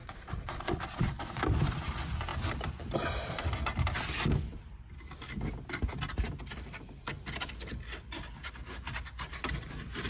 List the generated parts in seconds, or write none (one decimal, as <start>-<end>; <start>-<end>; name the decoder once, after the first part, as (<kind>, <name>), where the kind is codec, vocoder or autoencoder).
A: 0.0-1.4 (vocoder, Vocos)